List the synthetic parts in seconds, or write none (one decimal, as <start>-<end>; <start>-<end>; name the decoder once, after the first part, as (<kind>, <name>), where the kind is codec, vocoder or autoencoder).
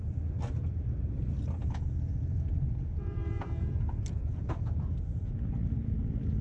1.6-5.3 (vocoder, Vocos)